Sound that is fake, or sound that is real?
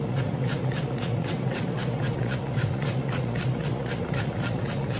fake